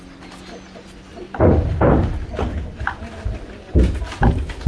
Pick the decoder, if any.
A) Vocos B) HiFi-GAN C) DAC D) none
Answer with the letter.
D